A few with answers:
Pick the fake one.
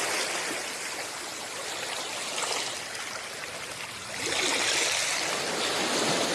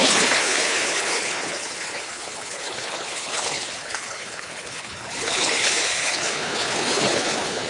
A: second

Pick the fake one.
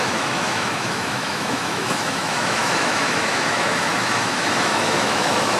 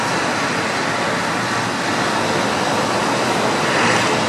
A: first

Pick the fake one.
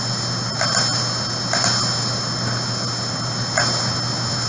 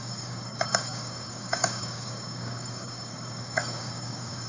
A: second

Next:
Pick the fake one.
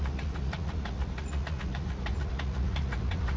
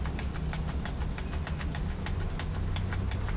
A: first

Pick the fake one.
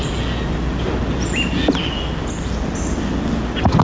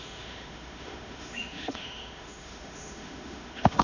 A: second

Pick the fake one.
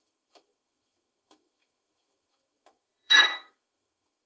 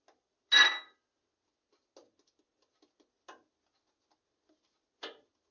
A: first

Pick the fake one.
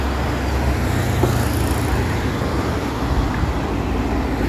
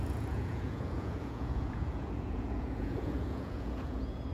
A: second